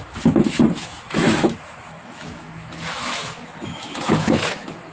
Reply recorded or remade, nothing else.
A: remade